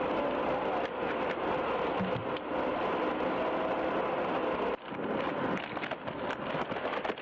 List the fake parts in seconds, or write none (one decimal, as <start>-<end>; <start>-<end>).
none